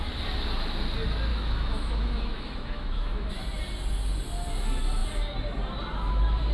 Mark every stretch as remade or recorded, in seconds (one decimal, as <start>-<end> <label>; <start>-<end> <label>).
0.0-1.3 recorded; 1.3-3.3 remade; 3.3-6.5 recorded